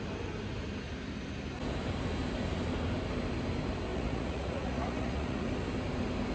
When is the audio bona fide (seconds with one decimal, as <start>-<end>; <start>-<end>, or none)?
0.0-3.9; 5.5-6.3